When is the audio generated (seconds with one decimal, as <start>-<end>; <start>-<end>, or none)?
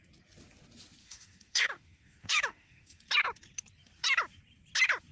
1.0-3.0